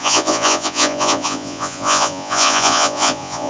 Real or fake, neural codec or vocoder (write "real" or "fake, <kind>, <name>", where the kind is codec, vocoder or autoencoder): fake, vocoder, Vocos